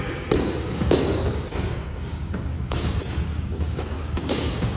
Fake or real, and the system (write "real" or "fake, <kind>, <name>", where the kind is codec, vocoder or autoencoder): fake, codec, DAC